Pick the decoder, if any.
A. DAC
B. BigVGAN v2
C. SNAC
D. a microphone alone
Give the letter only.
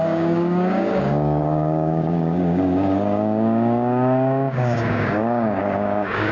A